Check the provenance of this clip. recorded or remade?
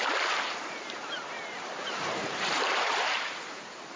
remade